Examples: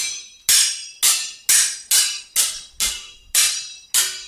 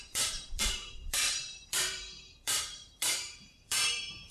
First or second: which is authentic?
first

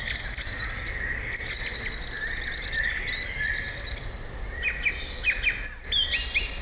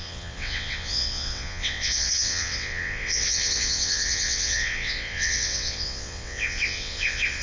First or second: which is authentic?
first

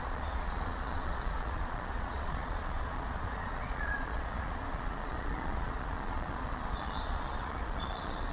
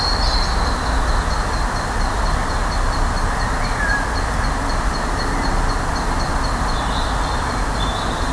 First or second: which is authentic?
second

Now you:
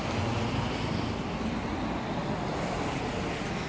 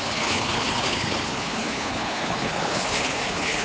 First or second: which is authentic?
first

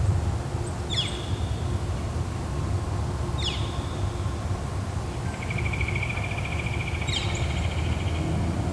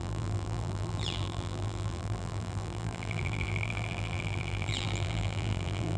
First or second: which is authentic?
first